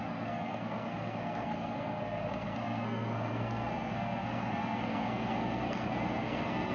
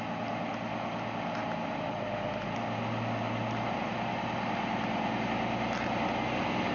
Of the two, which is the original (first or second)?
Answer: second